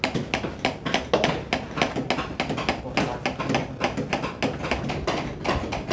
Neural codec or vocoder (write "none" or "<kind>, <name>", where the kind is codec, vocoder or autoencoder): none